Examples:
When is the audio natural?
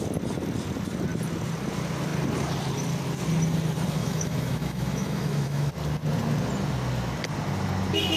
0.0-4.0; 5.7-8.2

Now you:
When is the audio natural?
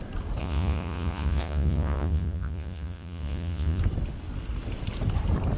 0.0-0.4; 3.8-5.6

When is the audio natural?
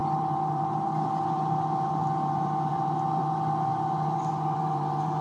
none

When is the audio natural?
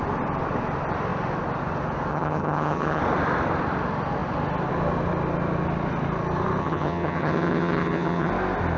0.0-2.1; 3.0-6.6; 8.3-8.8